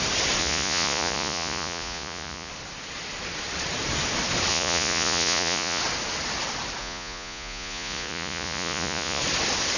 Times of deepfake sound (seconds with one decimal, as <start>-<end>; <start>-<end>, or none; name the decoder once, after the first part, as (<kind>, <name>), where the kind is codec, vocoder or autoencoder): 0.4-2.5 (vocoder, Vocos); 4.5-5.8; 6.8-9.2